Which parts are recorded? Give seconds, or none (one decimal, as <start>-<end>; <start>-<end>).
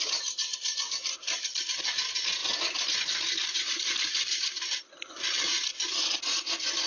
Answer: 0.0-6.9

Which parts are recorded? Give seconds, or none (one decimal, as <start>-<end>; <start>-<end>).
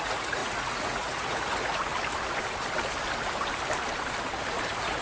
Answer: 1.9-4.6